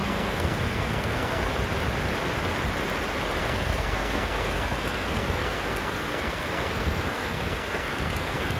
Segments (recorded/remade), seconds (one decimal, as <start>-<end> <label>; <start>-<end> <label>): 0.0-1.5 remade; 1.5-3.4 recorded; 3.4-8.6 remade